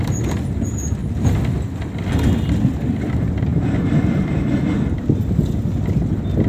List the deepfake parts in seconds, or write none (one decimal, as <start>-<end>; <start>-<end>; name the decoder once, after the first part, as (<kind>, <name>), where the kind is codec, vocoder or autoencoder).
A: 3.5-5.0 (vocoder, BigVGAN v2)